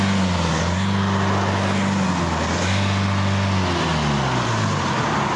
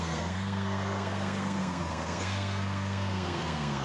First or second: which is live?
first